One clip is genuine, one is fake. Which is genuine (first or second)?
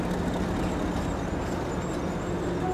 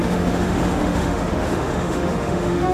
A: first